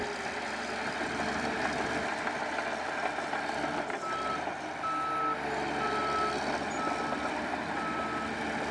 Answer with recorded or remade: recorded